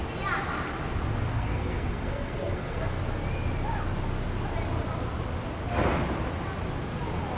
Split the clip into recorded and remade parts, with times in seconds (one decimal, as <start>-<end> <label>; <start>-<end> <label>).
0.0-1.3 recorded; 1.3-3.0 remade; 3.0-7.4 recorded

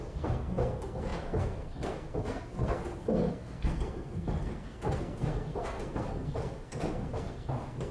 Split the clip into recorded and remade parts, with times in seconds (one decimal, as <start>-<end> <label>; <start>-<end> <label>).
0.0-7.9 remade

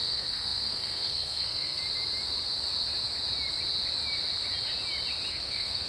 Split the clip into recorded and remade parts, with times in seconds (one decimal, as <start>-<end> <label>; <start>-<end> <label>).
0.0-1.8 remade; 1.8-5.3 recorded; 5.3-5.9 remade

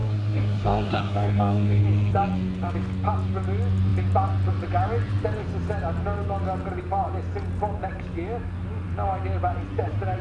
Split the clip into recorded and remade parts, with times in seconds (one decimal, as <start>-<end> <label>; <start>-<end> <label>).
0.0-1.8 remade; 1.8-10.2 recorded

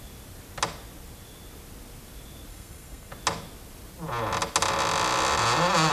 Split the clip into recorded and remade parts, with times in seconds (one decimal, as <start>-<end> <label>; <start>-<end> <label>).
0.0-2.5 recorded; 2.5-3.1 remade; 3.1-5.9 recorded

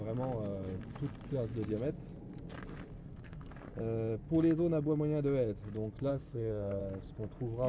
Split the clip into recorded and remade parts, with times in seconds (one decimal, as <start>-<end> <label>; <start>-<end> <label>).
0.0-3.0 recorded; 3.0-3.5 remade; 3.5-6.1 recorded; 6.1-6.8 remade; 6.8-7.7 recorded